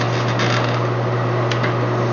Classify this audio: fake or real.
real